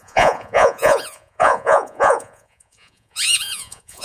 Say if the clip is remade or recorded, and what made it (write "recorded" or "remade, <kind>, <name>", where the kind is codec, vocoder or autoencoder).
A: remade, vocoder, Vocos